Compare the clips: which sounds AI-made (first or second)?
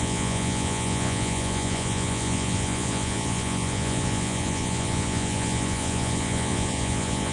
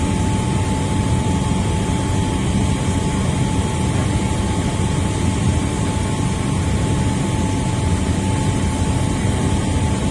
first